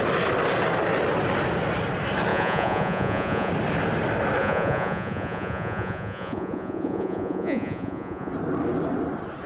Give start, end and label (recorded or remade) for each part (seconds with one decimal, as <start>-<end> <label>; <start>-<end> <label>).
0.0-2.3 recorded; 2.3-3.5 remade; 3.5-4.4 recorded; 4.4-8.3 remade; 8.3-9.5 recorded